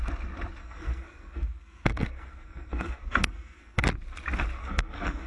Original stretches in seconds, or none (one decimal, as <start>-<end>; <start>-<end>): 0.0-0.6; 3.8-4.6